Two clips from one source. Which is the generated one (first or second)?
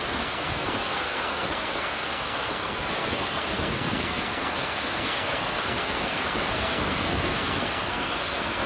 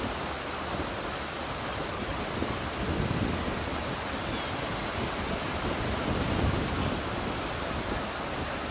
first